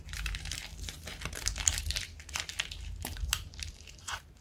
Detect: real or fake fake